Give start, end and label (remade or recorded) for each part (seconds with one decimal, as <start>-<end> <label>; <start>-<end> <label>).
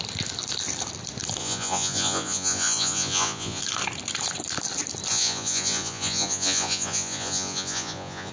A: 0.0-1.4 recorded; 1.4-3.6 remade; 3.6-5.1 recorded; 5.1-8.3 remade